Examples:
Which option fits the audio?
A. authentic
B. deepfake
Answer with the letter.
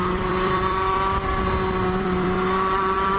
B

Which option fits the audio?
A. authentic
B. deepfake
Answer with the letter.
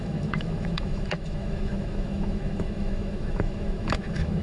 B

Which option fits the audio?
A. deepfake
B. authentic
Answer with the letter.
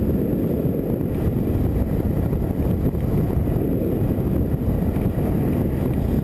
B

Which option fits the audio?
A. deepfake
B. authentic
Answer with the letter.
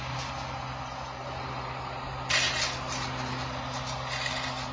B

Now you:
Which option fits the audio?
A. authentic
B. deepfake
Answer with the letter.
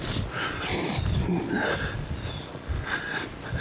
A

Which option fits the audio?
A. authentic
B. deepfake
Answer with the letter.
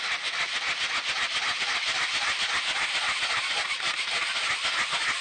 A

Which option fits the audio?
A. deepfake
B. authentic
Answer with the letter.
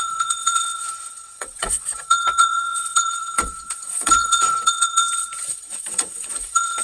A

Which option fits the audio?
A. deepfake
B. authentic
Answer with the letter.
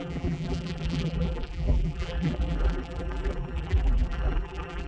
A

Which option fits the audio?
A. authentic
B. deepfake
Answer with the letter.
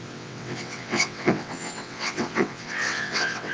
B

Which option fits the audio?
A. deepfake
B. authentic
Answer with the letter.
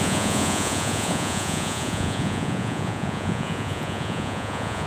A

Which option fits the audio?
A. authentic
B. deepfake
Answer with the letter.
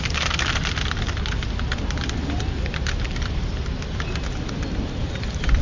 A